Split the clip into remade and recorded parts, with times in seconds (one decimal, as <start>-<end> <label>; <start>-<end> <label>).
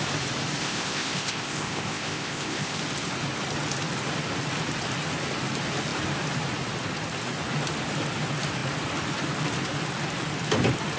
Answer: 0.0-0.6 recorded; 0.6-2.8 remade; 2.8-11.0 recorded